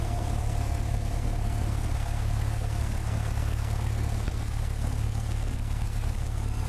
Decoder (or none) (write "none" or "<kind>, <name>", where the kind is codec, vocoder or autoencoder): codec, SNAC